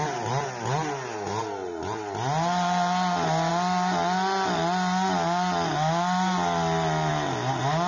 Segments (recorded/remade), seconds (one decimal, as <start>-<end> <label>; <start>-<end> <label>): 0.0-7.9 recorded